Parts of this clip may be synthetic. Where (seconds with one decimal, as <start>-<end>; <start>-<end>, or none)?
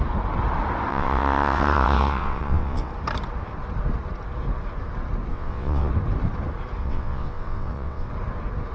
0.9-2.9; 5.3-5.9; 6.8-8.1